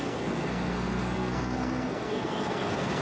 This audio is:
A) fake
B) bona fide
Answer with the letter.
A